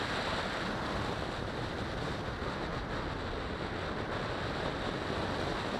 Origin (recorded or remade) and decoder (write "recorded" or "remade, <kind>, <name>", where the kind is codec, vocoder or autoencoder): recorded